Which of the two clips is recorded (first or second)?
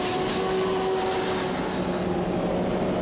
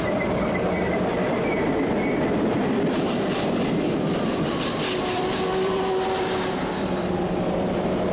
first